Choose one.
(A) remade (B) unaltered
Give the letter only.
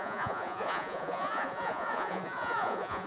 A